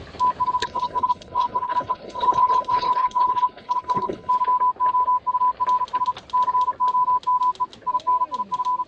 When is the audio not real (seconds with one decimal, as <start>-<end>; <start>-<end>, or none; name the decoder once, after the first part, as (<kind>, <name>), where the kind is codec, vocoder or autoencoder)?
0.6-4.3 (codec, HILCodec)